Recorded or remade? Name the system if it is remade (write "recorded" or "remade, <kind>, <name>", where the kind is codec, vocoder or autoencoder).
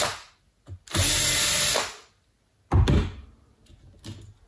recorded